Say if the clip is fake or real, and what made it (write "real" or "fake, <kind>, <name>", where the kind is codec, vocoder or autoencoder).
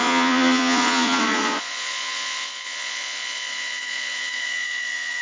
fake, vocoder, Vocos